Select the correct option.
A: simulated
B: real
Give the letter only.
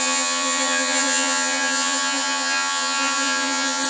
A